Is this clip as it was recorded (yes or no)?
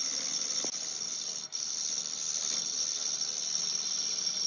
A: yes